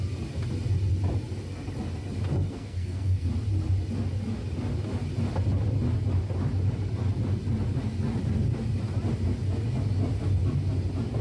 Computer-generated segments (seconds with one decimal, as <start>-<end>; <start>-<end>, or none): 2.3-3.3